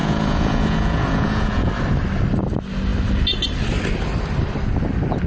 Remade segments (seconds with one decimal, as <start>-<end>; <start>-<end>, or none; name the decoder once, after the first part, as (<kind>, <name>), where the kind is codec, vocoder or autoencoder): 0.0-1.7 (vocoder, Vocos)